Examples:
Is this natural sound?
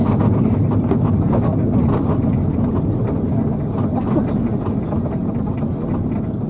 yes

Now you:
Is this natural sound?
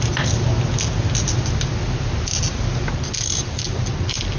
yes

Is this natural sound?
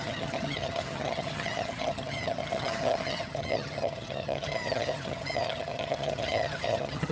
no